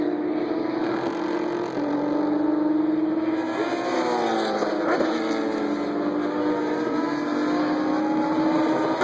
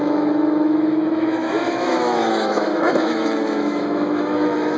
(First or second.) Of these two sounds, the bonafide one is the first